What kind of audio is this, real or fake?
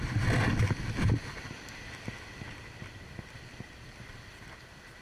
real